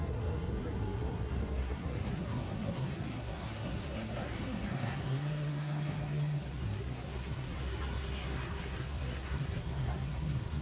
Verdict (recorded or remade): remade